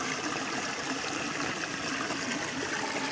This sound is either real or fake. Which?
real